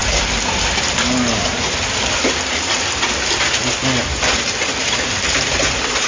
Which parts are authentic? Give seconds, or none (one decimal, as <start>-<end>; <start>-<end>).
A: 0.8-1.5; 3.5-4.1; 5.3-6.1